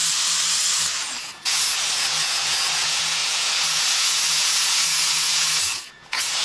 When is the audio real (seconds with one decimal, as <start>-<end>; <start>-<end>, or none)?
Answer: 0.0-1.2